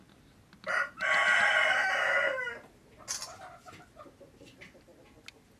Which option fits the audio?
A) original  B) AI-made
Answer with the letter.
A